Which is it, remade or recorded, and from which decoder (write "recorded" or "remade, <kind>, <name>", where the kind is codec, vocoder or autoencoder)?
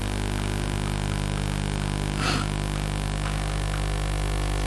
recorded